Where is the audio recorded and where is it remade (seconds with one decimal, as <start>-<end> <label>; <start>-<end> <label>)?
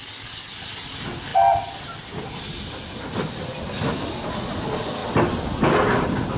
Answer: 0.0-6.4 recorded